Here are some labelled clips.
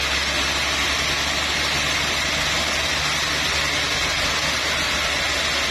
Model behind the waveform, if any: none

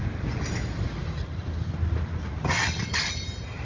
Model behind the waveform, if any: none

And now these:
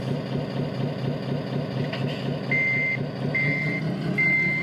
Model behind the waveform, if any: none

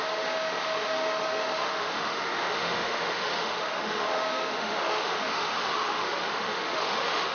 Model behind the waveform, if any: autoencoder, DAC-VAE